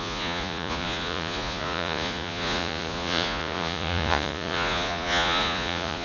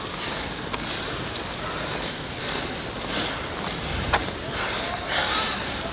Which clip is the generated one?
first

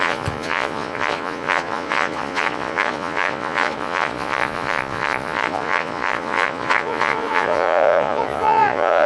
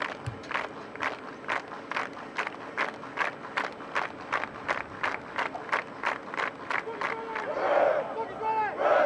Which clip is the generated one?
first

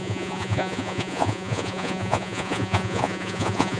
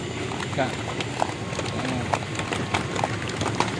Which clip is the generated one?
first